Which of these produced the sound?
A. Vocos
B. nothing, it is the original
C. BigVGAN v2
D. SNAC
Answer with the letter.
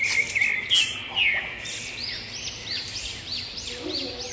B